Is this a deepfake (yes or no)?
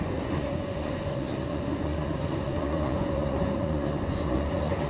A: yes